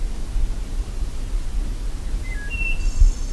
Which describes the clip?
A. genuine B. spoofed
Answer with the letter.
A